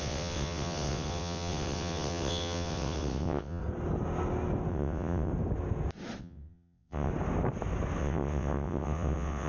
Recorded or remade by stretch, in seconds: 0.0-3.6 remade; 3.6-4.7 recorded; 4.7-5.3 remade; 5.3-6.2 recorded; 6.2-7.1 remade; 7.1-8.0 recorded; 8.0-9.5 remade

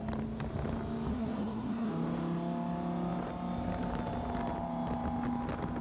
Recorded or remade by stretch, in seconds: 0.0-1.1 recorded; 1.1-1.9 remade; 1.9-5.8 recorded

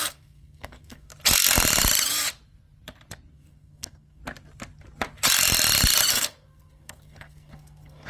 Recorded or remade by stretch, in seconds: 0.0-1.1 remade; 1.1-3.3 recorded; 3.3-4.2 remade; 4.2-6.1 recorded; 6.1-8.1 remade

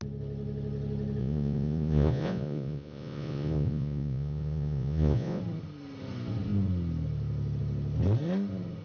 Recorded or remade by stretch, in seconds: 0.0-1.2 recorded; 1.2-5.4 remade; 5.4-8.8 recorded

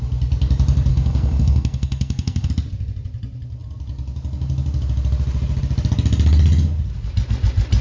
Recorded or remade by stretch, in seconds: 0.0-0.9 recorded; 0.9-2.5 remade; 2.5-7.8 recorded

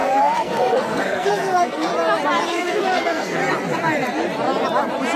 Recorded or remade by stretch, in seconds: 0.0-1.9 remade; 1.9-2.5 recorded; 2.5-3.4 remade; 3.4-5.2 recorded

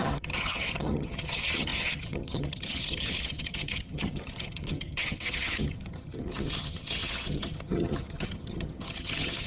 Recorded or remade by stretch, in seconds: 0.0-9.5 remade

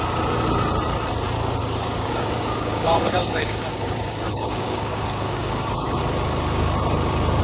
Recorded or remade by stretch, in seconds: 0.0-1.6 recorded; 1.6-6.0 remade; 6.0-7.4 recorded